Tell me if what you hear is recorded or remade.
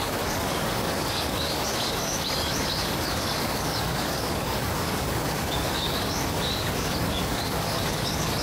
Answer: remade